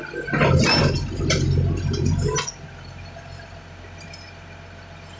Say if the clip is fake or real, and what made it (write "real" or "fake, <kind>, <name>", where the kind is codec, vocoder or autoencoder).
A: real